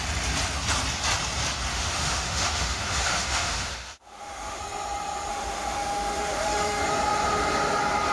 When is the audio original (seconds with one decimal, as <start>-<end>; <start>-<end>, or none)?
0.0-1.7; 4.6-5.3; 6.8-8.1